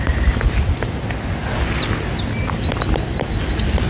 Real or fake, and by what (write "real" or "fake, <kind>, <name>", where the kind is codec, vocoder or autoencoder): real